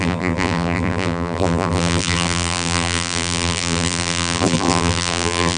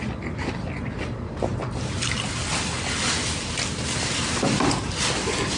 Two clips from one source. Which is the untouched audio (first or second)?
second